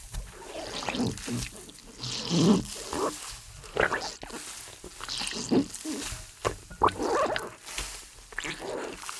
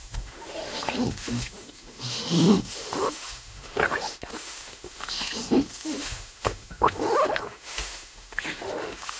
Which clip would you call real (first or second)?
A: first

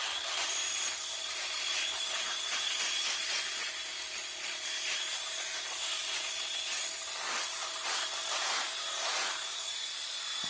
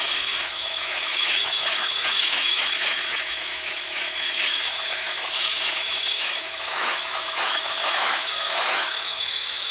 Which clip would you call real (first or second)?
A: first